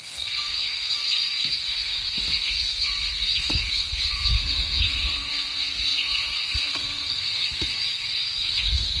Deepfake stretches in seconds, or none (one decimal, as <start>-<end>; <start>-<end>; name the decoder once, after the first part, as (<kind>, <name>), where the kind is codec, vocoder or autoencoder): 0.0-9.0 (codec, SNAC)